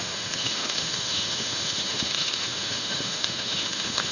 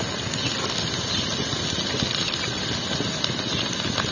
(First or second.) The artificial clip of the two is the first